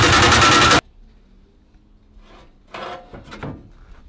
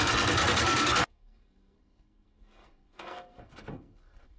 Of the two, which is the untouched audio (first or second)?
first